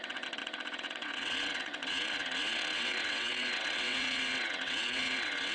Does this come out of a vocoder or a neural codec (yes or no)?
yes